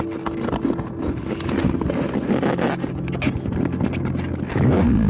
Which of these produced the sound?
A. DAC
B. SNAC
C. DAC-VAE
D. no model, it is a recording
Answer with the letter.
D